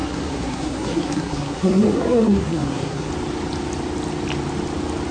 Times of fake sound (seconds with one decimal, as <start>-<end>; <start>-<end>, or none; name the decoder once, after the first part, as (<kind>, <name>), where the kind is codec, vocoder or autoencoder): 0.0-3.1 (codec, SNAC)